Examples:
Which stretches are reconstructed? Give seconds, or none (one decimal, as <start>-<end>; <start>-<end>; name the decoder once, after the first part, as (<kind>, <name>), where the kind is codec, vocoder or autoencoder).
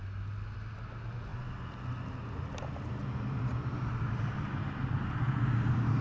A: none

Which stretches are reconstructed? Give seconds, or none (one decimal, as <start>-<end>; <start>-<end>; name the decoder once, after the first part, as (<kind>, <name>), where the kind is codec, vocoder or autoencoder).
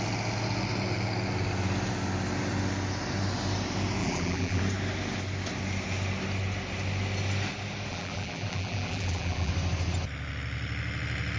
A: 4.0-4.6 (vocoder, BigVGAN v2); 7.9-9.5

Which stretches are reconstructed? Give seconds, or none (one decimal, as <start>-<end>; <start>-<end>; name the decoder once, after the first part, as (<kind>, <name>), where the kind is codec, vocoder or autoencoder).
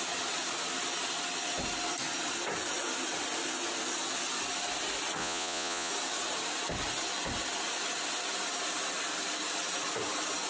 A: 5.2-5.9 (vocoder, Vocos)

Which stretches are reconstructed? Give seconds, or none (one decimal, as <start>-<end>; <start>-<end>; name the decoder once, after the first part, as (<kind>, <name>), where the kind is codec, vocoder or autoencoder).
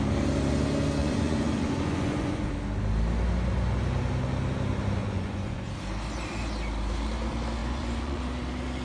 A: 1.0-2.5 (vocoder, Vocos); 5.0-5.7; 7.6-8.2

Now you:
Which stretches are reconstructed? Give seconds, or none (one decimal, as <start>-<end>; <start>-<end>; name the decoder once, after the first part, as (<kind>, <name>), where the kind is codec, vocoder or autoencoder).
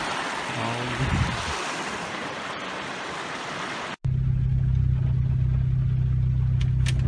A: none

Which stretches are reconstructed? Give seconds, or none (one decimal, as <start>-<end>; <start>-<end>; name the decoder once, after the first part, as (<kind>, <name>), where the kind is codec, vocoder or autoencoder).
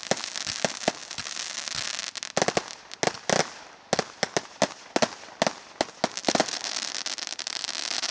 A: 6.2-6.9 (vocoder, BigVGAN v2)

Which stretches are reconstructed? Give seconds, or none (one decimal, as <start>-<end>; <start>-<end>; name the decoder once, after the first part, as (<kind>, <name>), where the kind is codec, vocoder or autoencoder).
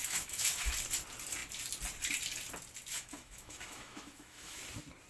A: 0.0-0.7 (autoencoder, DAC-VAE); 2.9-4.6